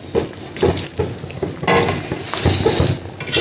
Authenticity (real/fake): real